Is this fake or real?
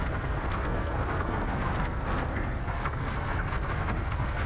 fake